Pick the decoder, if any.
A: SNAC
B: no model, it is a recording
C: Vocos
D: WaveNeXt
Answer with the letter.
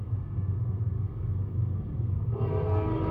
A